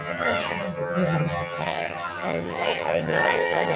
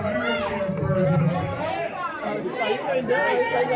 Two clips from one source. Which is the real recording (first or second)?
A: second